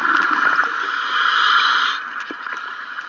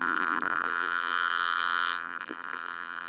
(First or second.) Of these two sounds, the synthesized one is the second